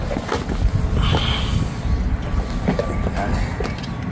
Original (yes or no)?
yes